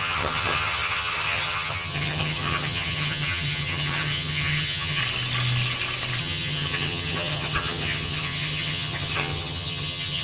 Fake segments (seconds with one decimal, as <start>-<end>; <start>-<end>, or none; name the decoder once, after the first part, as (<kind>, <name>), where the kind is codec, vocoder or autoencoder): 0.0-5.0 (vocoder, HiFi-GAN); 6.2-10.2